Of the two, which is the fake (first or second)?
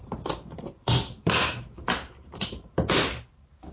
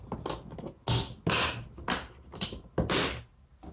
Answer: first